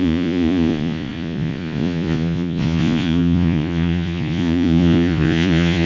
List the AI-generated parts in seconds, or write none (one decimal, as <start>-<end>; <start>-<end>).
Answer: 0.0-5.9